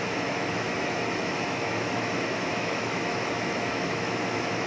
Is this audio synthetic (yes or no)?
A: yes